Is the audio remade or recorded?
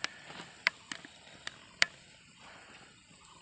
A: recorded